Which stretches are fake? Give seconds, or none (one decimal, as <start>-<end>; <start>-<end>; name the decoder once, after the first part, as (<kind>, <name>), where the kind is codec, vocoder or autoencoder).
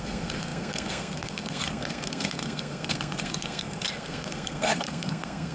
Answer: 0.0-5.5 (codec, SNAC)